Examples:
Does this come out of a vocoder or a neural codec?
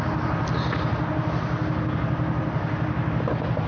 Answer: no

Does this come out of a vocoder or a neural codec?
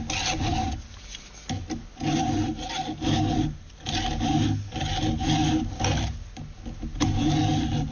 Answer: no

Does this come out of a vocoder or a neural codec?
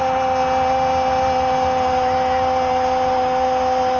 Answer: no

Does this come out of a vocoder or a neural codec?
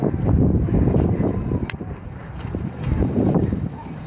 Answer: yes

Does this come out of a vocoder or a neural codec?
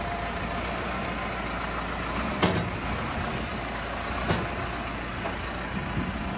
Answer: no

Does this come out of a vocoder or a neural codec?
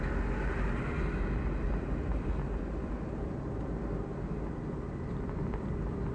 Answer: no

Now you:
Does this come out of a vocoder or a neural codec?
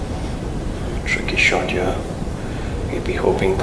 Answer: yes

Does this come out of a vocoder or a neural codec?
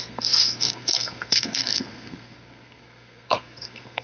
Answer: yes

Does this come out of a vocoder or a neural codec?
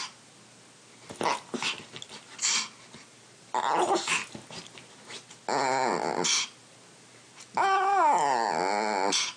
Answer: no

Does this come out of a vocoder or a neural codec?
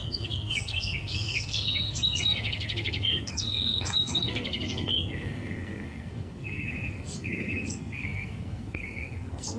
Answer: yes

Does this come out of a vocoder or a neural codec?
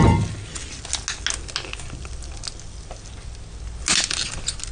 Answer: no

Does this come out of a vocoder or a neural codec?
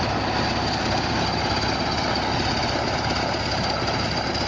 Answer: no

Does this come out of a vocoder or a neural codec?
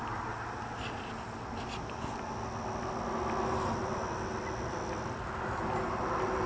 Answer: no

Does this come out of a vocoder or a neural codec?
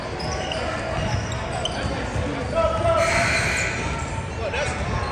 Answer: no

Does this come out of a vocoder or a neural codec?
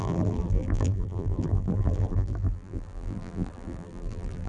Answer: yes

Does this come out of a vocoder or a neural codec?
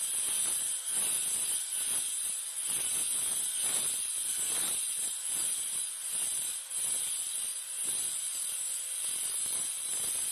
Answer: no